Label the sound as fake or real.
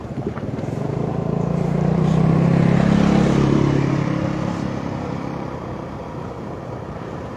fake